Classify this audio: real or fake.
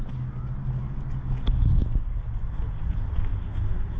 real